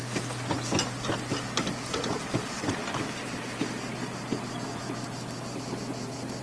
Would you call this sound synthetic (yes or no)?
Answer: no